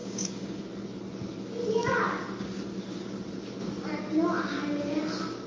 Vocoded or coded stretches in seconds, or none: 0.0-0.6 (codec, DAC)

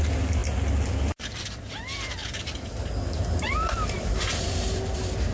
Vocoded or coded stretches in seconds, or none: 0.0-0.4 (vocoder, BigVGAN v2); 1.1-5.3